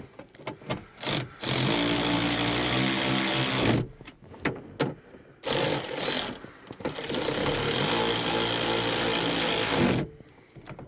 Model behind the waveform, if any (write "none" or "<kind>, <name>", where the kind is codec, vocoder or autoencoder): none